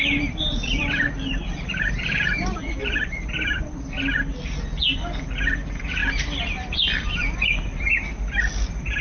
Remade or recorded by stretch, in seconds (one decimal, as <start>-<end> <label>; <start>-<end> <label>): 0.0-0.5 recorded; 0.5-2.2 remade; 2.2-2.8 recorded; 2.8-3.9 remade; 3.9-6.0 recorded; 6.0-7.2 remade; 7.2-9.0 recorded